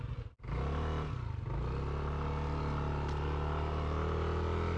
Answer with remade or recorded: recorded